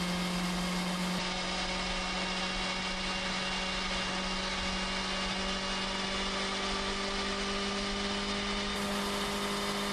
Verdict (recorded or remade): recorded